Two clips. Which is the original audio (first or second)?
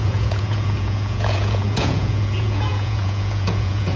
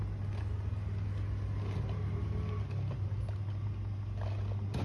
second